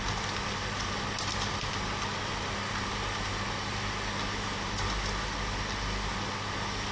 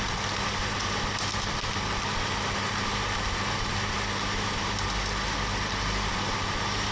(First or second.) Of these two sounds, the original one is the first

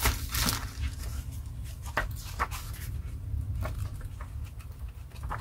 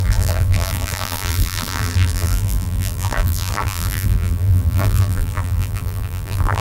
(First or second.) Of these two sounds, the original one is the first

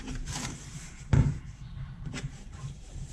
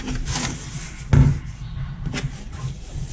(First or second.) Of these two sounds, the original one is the second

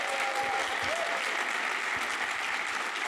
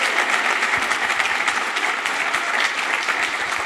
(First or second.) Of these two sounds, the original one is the first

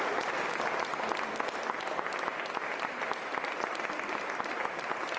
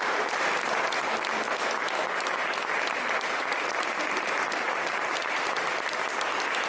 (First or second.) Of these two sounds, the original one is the first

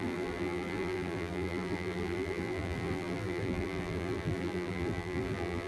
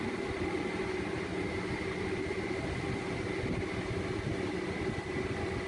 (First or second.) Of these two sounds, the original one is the second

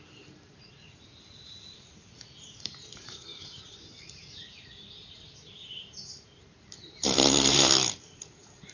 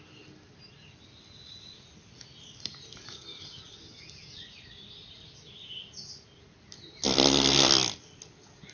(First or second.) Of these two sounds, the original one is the second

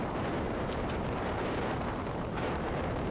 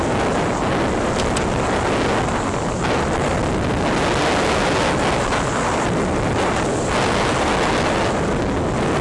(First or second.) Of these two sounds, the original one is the second